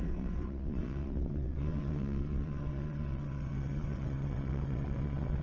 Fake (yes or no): yes